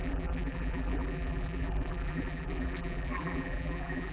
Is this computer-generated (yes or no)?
yes